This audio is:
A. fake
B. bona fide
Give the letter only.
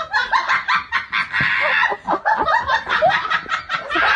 B